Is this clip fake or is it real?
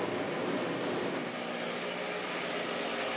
real